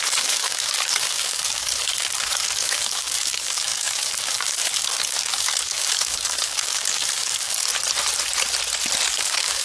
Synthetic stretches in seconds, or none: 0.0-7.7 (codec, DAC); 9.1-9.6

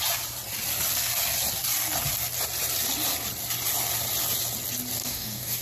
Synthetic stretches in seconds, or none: 5.0-5.6 (codec, DAC)

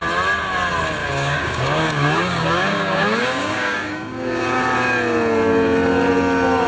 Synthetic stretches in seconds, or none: 1.0-4.6 (codec, DAC)

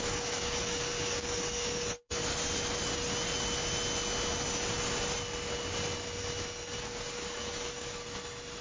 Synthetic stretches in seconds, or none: 0.0-2.2 (codec, DAC); 6.8-8.0

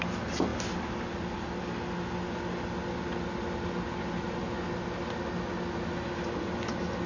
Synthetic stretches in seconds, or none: none